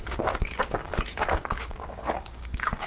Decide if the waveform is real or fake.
fake